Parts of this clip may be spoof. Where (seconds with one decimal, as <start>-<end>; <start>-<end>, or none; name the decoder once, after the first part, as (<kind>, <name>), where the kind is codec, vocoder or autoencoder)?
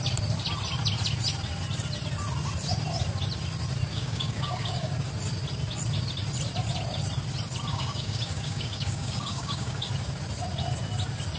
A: 3.9-4.9 (codec, DAC); 7.7-9.9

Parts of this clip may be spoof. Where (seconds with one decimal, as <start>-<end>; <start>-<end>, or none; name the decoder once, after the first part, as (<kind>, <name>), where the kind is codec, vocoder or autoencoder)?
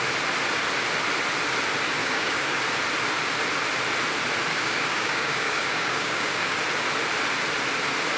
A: 2.0-2.6 (codec, DAC); 4.5-6.6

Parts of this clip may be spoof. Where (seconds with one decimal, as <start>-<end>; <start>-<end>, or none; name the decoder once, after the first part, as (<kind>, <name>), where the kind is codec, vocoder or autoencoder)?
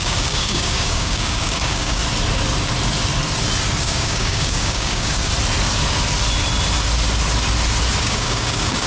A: 0.0-2.0 (codec, DAC); 3.8-5.3; 8.0-8.9